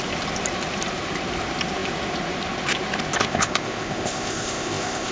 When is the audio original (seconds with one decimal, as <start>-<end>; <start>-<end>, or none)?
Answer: 0.0-3.2